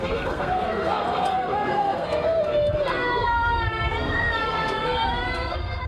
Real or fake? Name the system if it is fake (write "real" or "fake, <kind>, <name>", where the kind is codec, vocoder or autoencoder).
fake, codec, SNAC